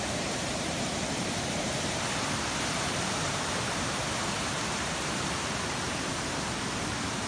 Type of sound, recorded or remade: remade